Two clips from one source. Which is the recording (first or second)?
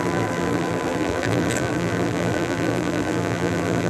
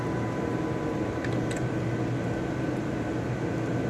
second